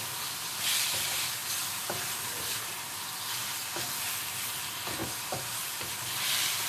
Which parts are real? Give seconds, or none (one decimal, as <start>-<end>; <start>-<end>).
1.4-2.4; 3.6-4.6